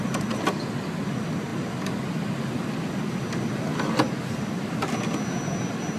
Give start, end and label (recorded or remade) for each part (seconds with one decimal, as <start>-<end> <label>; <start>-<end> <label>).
0.0-6.0 recorded